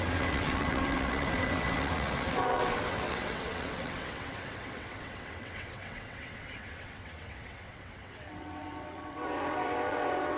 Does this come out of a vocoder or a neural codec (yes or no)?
yes